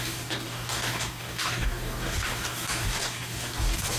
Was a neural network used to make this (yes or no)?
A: yes